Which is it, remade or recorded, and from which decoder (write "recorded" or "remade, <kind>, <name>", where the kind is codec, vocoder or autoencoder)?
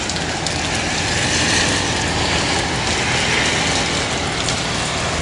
recorded